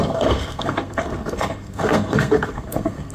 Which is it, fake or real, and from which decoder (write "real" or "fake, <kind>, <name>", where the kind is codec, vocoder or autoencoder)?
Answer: fake, codec, SNAC